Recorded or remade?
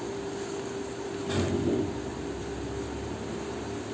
recorded